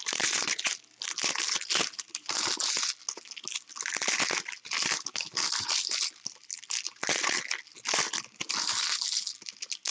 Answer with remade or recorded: recorded